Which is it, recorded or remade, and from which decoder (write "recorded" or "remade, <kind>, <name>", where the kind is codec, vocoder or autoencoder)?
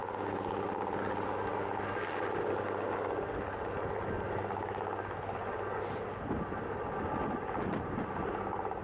recorded